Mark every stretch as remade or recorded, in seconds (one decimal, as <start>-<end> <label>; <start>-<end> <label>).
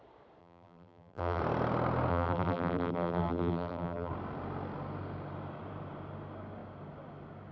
0.0-0.4 recorded; 0.4-1.4 remade; 1.4-2.1 recorded; 2.1-4.1 remade; 4.1-7.5 recorded